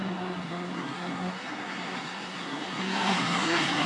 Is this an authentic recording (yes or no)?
no